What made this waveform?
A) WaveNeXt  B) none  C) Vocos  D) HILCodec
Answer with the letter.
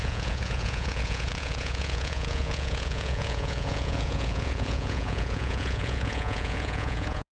C